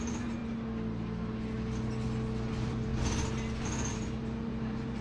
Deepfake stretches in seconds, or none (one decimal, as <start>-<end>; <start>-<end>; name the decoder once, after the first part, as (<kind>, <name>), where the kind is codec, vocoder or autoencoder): 0.0-0.4 (vocoder, BigVGAN v2); 2.5-2.9; 3.9-5.0